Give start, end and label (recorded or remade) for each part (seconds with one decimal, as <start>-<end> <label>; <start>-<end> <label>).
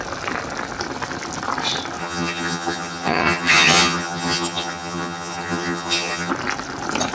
0.0-2.0 recorded; 2.0-6.3 remade; 6.3-7.1 recorded